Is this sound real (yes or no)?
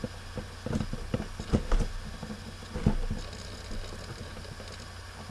yes